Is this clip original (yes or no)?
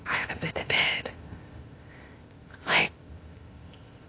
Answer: no